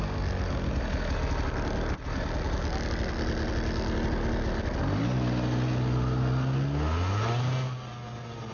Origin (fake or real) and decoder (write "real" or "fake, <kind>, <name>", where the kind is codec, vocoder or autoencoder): real